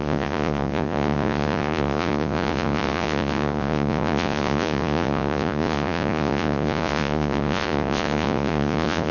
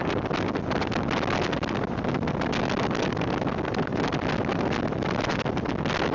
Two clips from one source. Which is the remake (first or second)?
first